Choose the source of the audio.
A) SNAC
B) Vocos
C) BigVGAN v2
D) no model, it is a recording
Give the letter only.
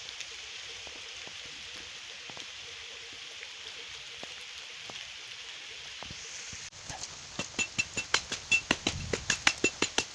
C